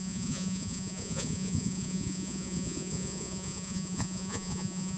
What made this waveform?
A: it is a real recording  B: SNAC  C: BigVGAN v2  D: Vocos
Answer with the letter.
D